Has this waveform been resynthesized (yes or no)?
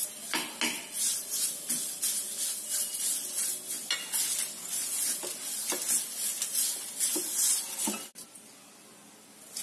no